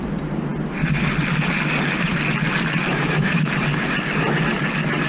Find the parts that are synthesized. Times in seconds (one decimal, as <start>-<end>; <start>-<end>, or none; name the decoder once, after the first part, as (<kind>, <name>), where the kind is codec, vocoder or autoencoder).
2.9-3.5 (autoencoder, DAC-VAE)